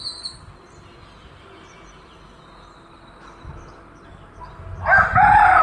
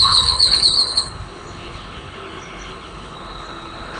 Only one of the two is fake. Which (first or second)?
second